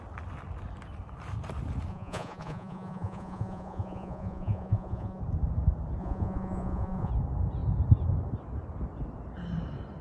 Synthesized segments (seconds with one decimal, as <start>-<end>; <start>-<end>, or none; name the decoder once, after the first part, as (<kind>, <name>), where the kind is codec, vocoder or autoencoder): 1.9-5.2 (vocoder, Vocos); 6.0-7.1